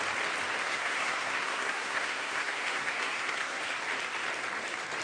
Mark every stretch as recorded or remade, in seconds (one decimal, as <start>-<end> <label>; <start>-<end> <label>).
0.0-0.6 recorded; 0.6-3.6 remade; 3.6-5.0 recorded